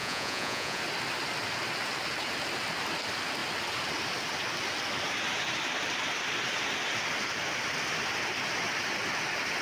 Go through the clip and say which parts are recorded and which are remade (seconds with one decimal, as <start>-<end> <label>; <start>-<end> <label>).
0.0-0.8 remade; 0.8-9.6 recorded